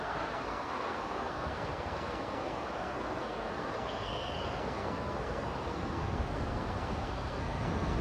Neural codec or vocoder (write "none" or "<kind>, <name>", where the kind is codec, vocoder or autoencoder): codec, SNAC